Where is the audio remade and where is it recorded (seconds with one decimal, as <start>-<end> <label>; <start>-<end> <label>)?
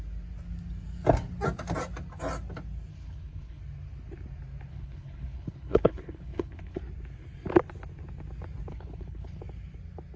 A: 0.0-2.9 recorded; 2.9-3.6 remade; 3.6-4.7 recorded; 4.7-6.8 remade; 6.8-8.7 recorded; 8.7-9.4 remade; 9.4-10.2 recorded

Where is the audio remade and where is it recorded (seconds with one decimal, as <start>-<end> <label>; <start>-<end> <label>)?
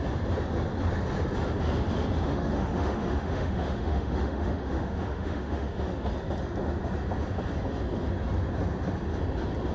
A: 0.0-2.3 recorded; 2.3-6.1 remade; 6.1-9.7 recorded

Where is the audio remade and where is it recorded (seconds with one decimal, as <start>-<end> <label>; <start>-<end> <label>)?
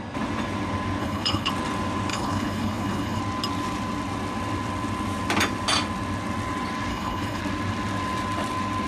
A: 0.0-1.0 recorded; 1.0-1.5 remade; 1.5-2.1 recorded; 2.1-3.2 remade; 3.2-6.9 recorded; 6.9-7.4 remade; 7.4-8.9 recorded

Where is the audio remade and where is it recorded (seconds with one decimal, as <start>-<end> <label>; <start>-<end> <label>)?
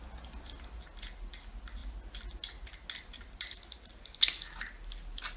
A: 0.0-5.4 recorded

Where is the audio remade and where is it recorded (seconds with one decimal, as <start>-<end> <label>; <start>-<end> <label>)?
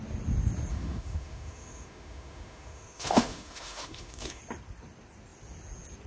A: 0.0-0.7 recorded; 0.7-4.4 remade; 4.4-6.1 recorded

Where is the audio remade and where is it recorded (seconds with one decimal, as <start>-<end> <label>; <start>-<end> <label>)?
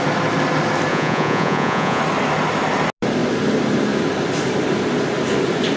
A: 0.0-0.9 recorded; 0.9-2.0 remade; 2.0-5.8 recorded